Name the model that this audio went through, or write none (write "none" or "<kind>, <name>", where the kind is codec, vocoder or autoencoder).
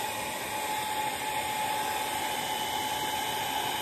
none